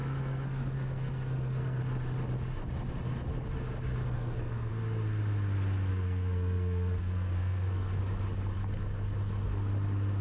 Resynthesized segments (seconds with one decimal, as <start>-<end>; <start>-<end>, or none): 0.0-1.8; 4.0-4.7; 5.9-8.0